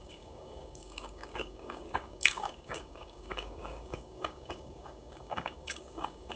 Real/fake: fake